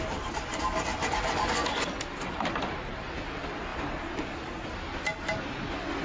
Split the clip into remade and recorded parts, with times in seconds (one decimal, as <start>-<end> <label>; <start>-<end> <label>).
0.0-6.0 recorded